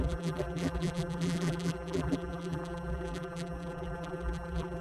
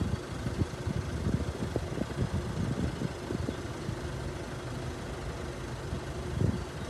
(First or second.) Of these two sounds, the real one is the second